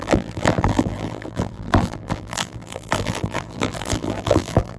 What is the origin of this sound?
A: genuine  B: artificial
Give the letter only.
B